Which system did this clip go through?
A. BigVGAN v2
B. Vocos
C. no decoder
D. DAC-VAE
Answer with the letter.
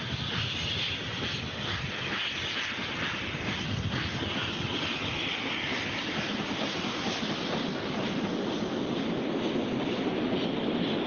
C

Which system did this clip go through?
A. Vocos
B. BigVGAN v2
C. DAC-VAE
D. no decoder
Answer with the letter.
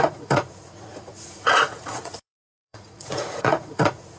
A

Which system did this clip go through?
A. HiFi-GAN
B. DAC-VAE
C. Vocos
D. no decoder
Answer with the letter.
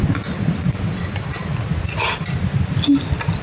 D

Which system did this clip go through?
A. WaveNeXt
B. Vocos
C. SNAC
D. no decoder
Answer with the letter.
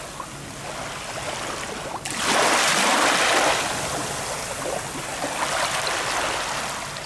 D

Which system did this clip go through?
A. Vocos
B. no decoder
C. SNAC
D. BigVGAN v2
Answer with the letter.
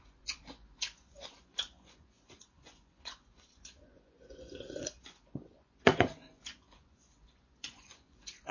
A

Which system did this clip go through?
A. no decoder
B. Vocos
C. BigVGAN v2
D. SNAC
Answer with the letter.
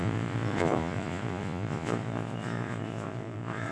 B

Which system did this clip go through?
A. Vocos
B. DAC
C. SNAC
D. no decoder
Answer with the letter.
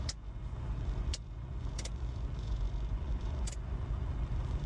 A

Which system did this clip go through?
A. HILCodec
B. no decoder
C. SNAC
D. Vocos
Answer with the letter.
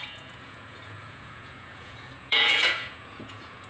D